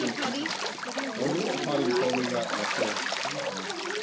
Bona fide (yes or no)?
yes